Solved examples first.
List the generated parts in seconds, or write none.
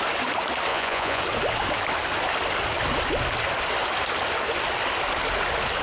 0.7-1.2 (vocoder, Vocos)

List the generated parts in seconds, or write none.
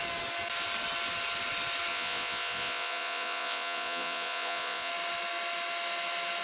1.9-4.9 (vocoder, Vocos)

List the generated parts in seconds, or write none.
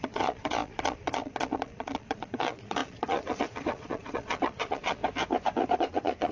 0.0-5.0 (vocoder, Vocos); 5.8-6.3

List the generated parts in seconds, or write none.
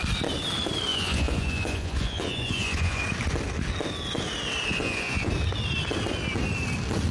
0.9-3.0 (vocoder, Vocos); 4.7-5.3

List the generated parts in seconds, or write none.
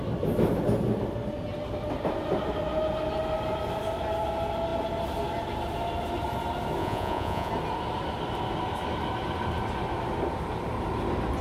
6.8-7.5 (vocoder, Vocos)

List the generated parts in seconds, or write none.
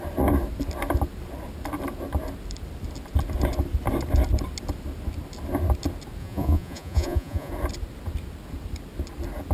6.2-7.5 (vocoder, Vocos)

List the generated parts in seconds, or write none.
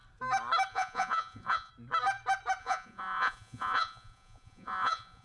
0.7-1.7 (vocoder, Vocos); 2.6-5.2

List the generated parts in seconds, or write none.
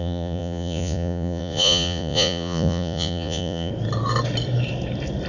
0.0-3.7 (vocoder, Vocos)